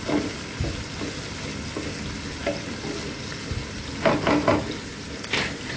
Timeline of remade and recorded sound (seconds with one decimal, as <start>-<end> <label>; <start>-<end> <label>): 0.0-5.8 recorded